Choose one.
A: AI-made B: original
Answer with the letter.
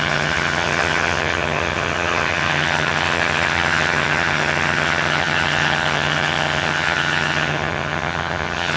A